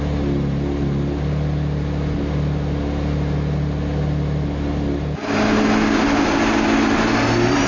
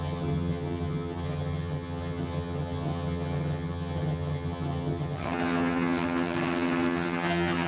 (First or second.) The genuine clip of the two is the first